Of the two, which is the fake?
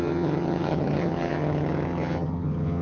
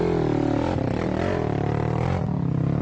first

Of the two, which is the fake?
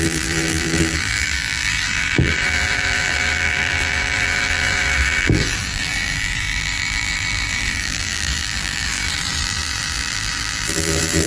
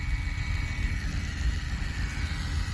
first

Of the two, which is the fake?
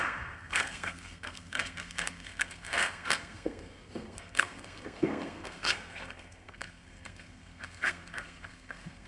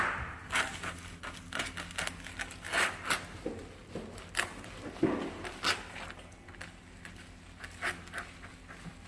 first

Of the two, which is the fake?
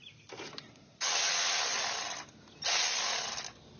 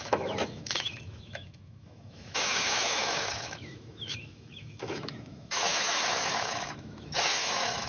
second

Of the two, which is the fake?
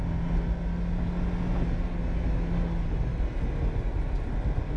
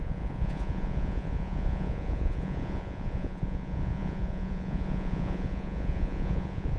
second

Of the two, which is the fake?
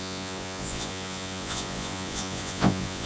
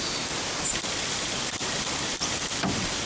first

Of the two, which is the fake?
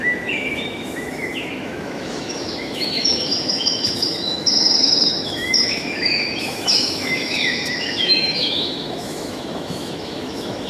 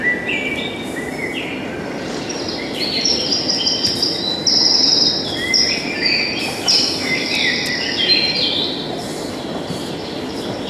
first